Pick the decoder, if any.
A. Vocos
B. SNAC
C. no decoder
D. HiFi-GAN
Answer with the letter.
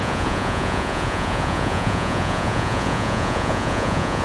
A